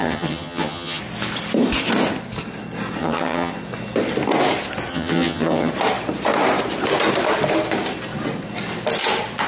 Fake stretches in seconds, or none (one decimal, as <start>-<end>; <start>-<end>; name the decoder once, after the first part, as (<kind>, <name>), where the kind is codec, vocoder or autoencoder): 0.0-1.0 (vocoder, HiFi-GAN); 3.0-3.5; 4.9-5.7